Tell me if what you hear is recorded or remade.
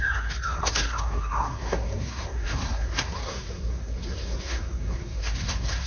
remade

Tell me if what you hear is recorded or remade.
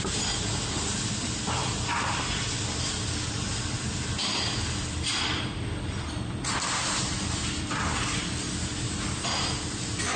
recorded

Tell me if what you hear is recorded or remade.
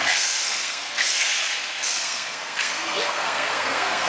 remade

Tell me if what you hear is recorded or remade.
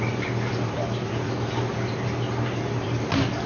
recorded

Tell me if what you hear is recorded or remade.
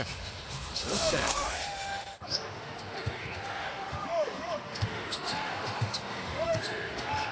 remade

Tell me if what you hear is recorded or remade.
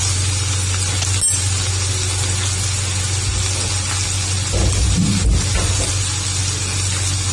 recorded